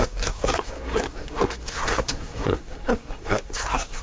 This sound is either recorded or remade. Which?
remade